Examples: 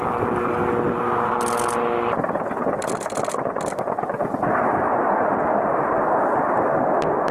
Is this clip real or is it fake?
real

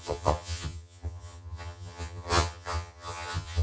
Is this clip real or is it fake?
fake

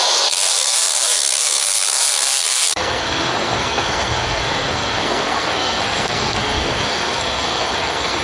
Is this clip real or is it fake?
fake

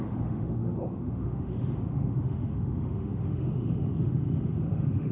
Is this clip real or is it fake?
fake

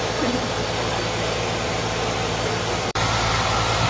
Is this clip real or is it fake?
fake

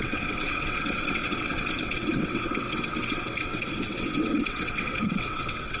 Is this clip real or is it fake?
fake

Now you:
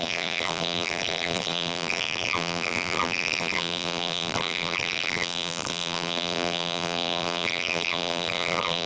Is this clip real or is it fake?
fake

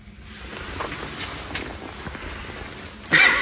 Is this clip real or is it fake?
real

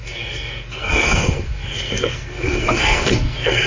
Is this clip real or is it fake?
fake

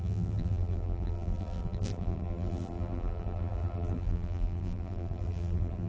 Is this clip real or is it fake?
fake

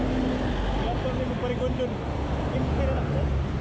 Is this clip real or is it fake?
real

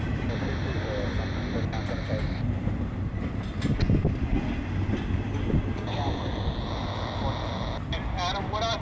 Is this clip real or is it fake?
real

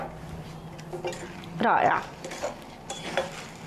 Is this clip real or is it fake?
real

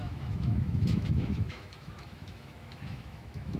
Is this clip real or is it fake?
fake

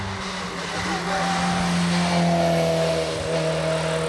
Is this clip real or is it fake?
real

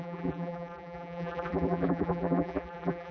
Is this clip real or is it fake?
fake